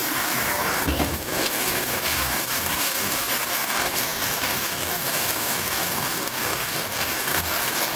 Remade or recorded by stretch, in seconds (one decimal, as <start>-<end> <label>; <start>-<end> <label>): 0.0-8.0 remade